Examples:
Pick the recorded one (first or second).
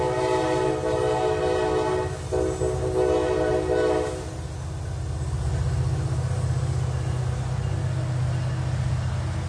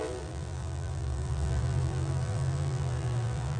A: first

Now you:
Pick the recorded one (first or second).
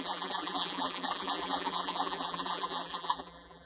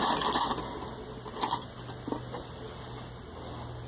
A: second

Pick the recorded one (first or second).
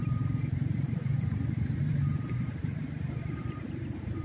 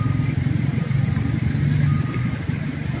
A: second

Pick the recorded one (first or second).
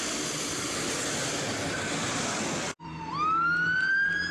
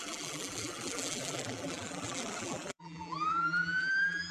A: first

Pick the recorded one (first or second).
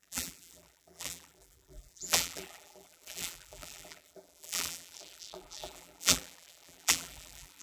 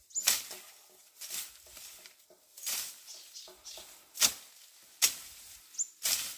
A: second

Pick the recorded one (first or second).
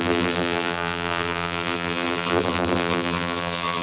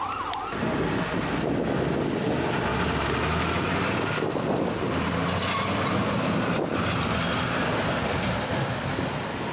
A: second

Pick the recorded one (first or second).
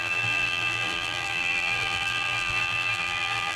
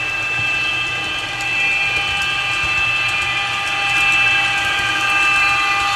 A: second